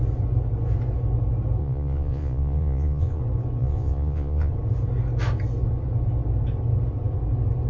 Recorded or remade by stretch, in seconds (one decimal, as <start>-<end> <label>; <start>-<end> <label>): 0.0-1.6 recorded; 1.6-3.2 remade; 3.2-3.6 recorded; 3.6-4.5 remade; 4.5-7.7 recorded

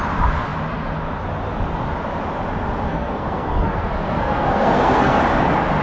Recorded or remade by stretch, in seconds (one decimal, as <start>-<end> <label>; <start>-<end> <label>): 0.0-2.9 recorded; 2.9-5.2 remade; 5.2-5.8 recorded

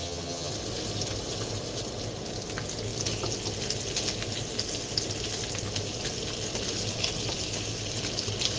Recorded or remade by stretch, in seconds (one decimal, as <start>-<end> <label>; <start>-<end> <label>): 0.0-0.5 remade; 0.5-8.6 recorded

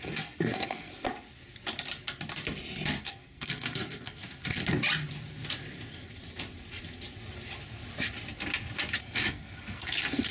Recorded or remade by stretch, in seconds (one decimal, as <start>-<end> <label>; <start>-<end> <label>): 0.0-0.9 remade; 0.9-3.0 recorded; 3.0-4.6 remade; 4.6-9.0 recorded; 9.0-10.3 remade

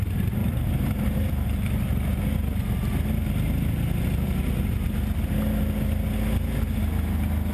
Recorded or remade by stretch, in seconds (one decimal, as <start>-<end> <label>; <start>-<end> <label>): 0.0-0.4 recorded; 0.4-1.3 remade; 1.3-7.5 recorded

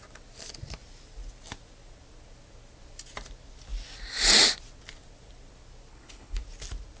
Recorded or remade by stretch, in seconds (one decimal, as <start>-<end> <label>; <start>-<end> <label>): 0.0-5.9 recorded; 5.9-6.4 remade; 6.4-7.0 recorded

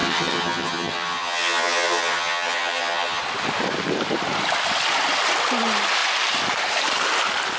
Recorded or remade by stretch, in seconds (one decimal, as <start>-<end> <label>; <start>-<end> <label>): 0.0-3.2 remade; 3.2-7.6 recorded

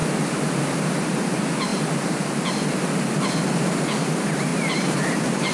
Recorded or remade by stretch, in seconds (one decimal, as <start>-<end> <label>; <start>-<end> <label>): 0.0-4.5 recorded; 4.5-5.5 remade